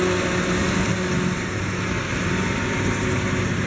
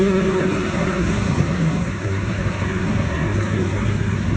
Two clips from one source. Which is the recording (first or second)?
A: first